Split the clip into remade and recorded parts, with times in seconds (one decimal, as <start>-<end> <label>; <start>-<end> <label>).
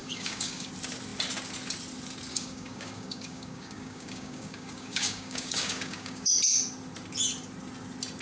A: 0.0-0.7 remade; 0.7-2.3 recorded; 2.3-6.4 remade; 6.4-8.2 recorded